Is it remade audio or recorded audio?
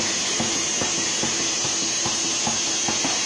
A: recorded